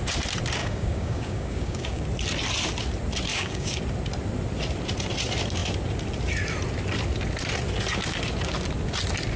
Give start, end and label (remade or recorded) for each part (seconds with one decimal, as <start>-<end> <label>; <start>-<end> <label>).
0.0-0.6 recorded; 0.6-2.0 remade; 2.0-3.3 recorded; 3.3-3.8 remade; 3.8-9.4 recorded